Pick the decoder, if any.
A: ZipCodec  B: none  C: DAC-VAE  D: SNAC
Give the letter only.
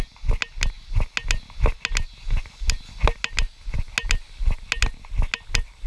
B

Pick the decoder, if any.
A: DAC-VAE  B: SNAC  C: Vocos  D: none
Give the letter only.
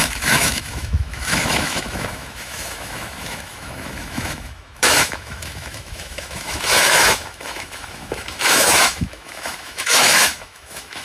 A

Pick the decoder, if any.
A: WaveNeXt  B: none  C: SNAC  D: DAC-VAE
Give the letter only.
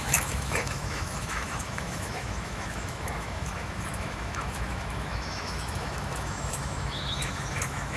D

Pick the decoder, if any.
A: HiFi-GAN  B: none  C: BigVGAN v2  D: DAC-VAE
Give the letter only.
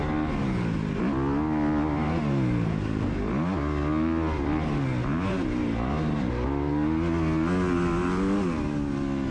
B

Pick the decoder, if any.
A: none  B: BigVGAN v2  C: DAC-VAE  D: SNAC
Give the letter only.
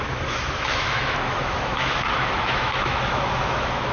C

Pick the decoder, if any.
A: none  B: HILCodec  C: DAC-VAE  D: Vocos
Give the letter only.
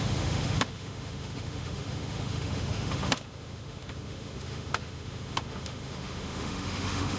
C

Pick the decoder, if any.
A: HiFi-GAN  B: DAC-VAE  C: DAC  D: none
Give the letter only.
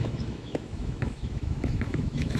B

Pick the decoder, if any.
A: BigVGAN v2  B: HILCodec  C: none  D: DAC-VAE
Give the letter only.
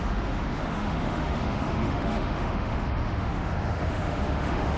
D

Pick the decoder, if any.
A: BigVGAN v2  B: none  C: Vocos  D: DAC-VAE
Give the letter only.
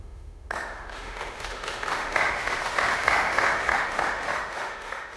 D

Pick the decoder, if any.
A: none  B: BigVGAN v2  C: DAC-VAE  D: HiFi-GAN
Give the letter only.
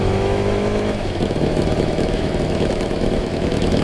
C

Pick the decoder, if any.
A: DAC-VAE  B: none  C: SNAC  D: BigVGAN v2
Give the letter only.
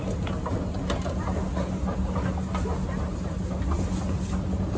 B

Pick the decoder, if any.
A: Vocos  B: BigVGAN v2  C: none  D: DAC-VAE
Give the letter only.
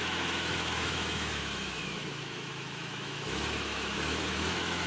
D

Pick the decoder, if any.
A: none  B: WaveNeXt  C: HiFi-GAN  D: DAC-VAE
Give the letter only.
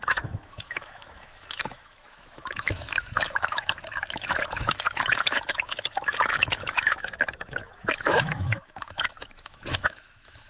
D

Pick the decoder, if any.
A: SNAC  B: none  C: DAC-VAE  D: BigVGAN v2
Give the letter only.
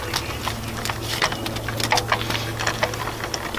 B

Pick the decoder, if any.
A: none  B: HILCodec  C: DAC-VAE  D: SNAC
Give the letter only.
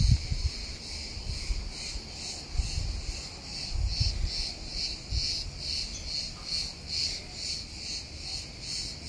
A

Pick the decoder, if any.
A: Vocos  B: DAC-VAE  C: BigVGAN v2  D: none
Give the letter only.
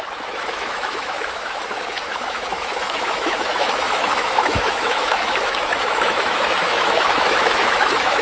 B